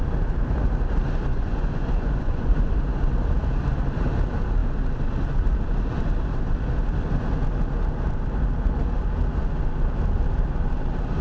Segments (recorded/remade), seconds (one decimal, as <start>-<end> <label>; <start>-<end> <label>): 0.0-1.3 recorded; 1.3-2.7 remade; 2.7-11.2 recorded